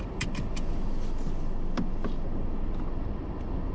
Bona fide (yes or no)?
yes